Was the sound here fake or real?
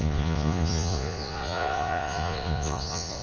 fake